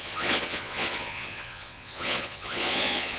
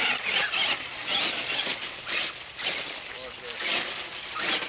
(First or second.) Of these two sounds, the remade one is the first